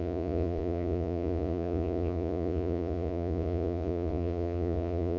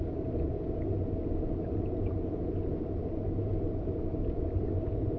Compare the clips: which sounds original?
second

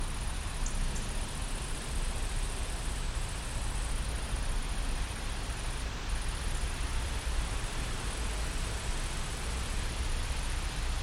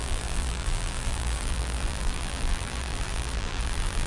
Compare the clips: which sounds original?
first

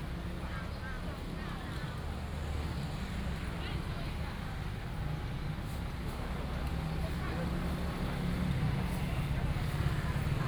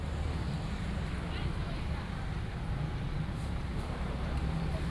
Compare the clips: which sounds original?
first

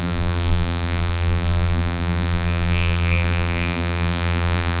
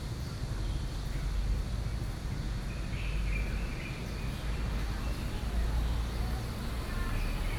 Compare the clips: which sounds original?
second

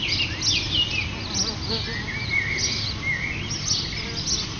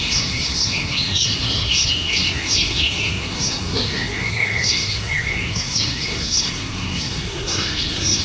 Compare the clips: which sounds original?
first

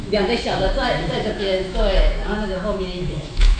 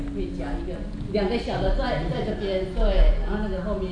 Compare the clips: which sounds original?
second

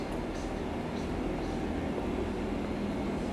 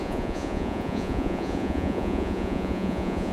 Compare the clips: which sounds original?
first